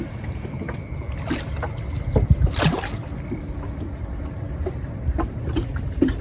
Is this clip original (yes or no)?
no